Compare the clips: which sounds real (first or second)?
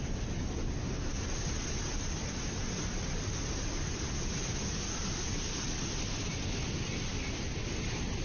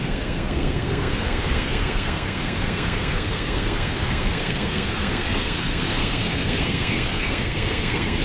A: first